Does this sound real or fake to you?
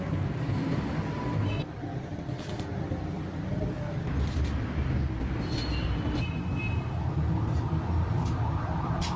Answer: real